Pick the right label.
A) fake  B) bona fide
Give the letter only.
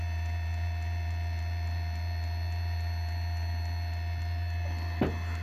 B